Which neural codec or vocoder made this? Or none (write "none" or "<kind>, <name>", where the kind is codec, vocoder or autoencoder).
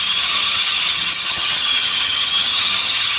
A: vocoder, HiFi-GAN